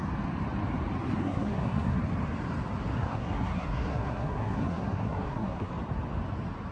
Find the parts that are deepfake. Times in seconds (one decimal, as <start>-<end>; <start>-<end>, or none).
1.2-2.0; 3.0-5.7